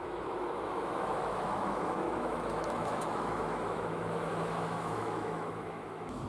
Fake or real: fake